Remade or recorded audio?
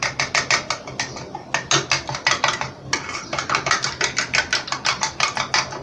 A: recorded